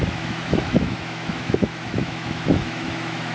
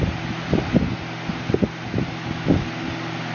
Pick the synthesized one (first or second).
first